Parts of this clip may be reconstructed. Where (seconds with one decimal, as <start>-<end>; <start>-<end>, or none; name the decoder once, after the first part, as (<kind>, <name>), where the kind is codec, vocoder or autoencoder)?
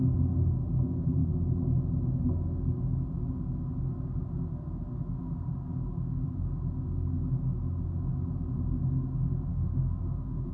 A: 9.5-10.5 (autoencoder, DAC-VAE)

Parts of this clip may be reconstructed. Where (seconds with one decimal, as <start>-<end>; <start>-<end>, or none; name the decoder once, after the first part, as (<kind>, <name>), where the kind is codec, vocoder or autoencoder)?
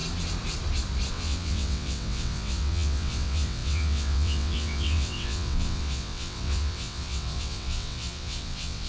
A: 1.1-8.9 (vocoder, WaveNeXt)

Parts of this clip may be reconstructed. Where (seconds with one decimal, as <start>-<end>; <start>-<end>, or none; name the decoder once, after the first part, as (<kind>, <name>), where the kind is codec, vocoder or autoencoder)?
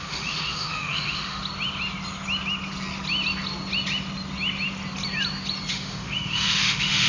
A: 0.0-1.4 (autoencoder, DAC-VAE); 5.7-7.1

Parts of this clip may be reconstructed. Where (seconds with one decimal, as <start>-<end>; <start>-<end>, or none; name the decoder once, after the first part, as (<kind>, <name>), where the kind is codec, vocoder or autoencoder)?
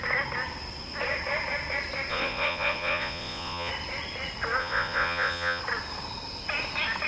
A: 2.1-3.7 (vocoder, Vocos); 4.6-5.6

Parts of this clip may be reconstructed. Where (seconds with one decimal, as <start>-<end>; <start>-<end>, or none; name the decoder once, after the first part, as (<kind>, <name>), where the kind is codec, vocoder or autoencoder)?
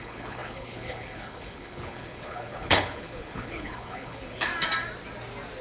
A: 0.0-4.5 (codec, HILCodec)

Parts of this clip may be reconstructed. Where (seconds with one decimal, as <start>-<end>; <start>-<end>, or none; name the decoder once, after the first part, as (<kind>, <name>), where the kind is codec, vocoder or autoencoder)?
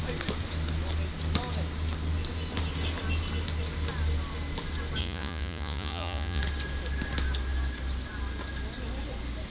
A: 5.0-6.4 (vocoder, Vocos)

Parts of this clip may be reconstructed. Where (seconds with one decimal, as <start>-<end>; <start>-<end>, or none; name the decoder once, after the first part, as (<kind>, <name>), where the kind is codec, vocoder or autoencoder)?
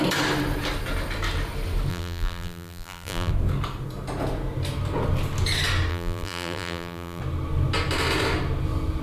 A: 1.9-3.3 (vocoder, BigVGAN v2); 5.9-7.2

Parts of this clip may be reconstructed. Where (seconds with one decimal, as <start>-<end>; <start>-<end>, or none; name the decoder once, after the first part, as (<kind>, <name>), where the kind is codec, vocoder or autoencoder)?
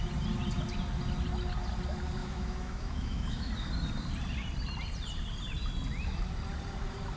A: 2.2-3.5 (autoencoder, DAC-VAE)